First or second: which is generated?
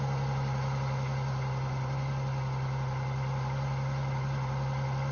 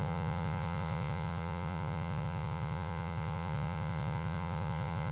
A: second